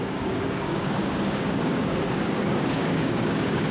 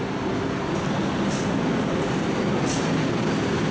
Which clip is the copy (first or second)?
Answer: first